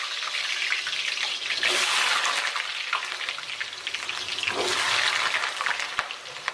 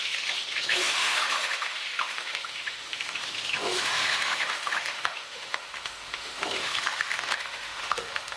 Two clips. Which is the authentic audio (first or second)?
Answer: first